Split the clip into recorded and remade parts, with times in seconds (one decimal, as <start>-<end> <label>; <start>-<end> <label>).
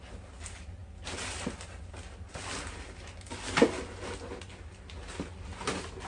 0.0-6.1 recorded